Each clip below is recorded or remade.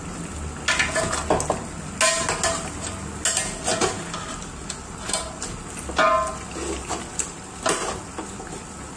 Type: recorded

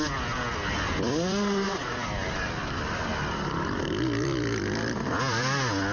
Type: remade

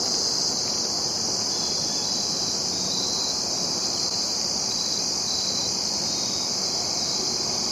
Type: recorded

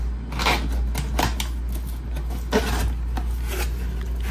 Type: recorded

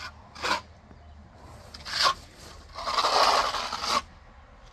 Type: recorded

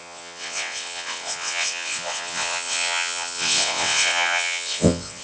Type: remade